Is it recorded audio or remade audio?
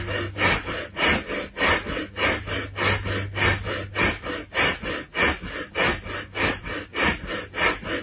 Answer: recorded